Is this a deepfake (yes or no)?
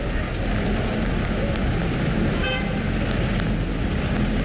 no